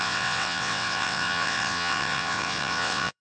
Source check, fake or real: fake